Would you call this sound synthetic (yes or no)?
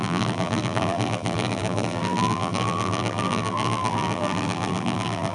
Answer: yes